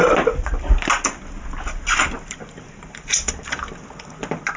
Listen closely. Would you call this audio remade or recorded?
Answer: recorded